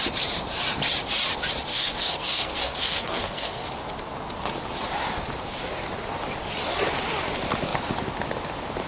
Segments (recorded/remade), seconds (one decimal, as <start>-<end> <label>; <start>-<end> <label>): 0.0-1.7 recorded; 1.7-3.7 remade; 3.7-8.9 recorded